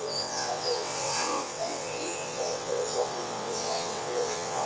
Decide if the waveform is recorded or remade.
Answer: remade